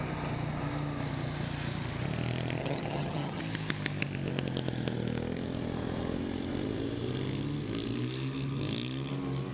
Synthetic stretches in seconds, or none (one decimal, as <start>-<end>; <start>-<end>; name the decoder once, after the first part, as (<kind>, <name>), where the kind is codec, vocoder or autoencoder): 2.6-3.4 (vocoder, HiFi-GAN)